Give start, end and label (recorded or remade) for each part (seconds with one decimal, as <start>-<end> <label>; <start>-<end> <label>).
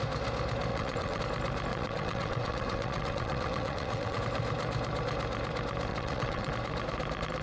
0.0-0.7 recorded; 0.7-1.2 remade; 1.2-1.7 recorded; 1.7-4.2 remade; 4.2-5.9 recorded; 5.9-6.5 remade; 6.5-7.4 recorded